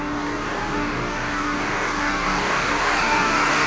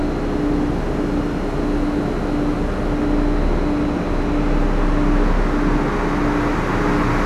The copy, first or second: first